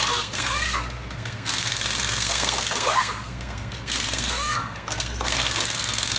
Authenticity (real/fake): fake